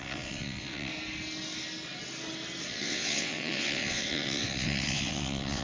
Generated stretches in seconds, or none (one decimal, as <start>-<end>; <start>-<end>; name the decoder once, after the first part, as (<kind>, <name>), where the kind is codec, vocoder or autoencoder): 0.0-0.9 (vocoder, WaveNeXt); 2.7-5.6